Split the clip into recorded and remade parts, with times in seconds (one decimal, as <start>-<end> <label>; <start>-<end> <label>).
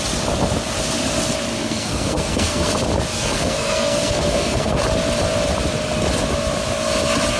0.0-1.6 recorded; 1.6-2.7 remade; 2.7-3.1 recorded; 3.1-4.8 remade; 4.8-7.4 recorded